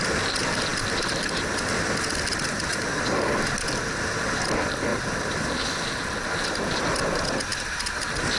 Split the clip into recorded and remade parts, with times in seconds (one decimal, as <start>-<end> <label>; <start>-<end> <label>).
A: 0.0-8.4 recorded